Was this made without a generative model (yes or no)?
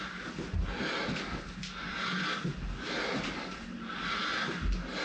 yes